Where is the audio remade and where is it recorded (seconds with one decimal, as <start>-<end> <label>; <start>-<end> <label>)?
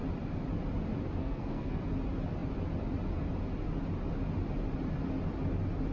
0.0-1.2 recorded; 1.2-1.8 remade; 1.8-5.9 recorded